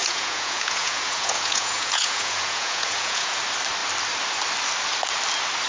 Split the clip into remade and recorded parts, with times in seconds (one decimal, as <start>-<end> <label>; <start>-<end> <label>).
0.0-3.4 remade; 3.4-5.7 recorded